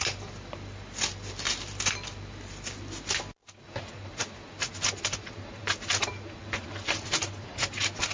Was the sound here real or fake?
real